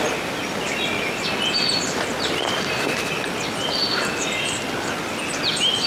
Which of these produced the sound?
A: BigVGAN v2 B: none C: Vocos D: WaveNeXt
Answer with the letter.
B